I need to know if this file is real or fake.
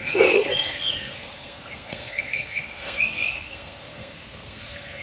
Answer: fake